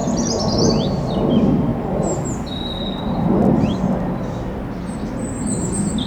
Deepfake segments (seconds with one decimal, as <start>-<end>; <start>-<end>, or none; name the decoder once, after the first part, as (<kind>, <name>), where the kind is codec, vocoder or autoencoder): 0.0-0.7 (vocoder, BigVGAN v2)